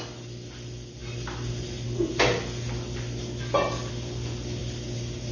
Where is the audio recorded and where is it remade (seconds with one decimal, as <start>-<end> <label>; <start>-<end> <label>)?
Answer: 0.0-5.3 recorded